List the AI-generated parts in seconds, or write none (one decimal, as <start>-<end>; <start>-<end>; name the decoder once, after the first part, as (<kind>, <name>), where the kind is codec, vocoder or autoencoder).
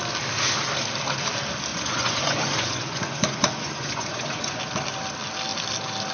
1.7-4.6 (vocoder, Vocos)